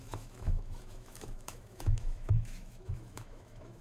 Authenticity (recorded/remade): remade